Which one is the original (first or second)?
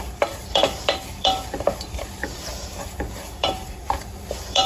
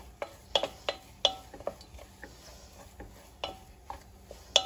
second